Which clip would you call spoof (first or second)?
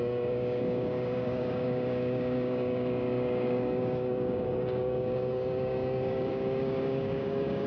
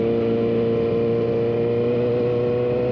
first